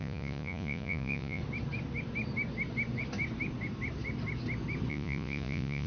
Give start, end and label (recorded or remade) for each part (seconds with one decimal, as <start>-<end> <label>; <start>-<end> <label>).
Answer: 0.0-1.4 remade; 1.4-4.9 recorded; 4.9-5.9 remade